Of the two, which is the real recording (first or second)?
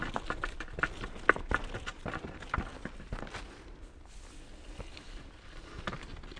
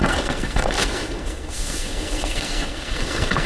first